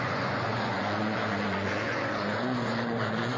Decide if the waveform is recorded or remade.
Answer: remade